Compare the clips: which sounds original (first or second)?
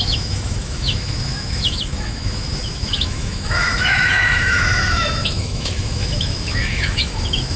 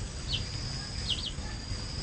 second